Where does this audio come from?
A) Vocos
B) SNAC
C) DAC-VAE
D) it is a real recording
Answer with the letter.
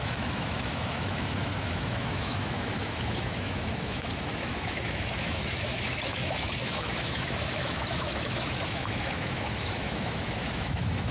C